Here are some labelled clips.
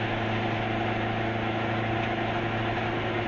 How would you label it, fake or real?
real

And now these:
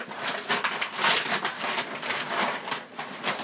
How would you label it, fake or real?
real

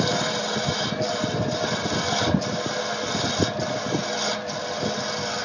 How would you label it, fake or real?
real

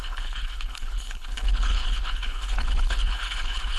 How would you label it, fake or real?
fake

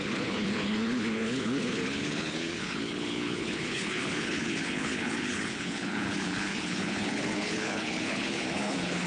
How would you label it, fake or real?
fake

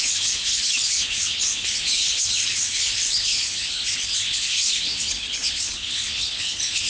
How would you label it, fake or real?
fake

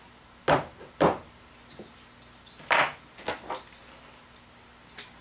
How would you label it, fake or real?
real